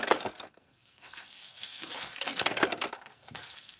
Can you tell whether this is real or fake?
fake